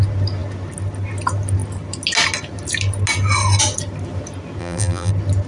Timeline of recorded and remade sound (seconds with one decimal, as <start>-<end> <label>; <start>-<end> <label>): 0.0-4.6 recorded; 4.6-5.1 remade; 5.1-5.5 recorded